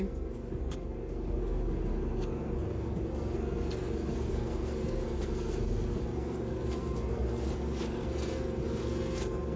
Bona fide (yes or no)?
no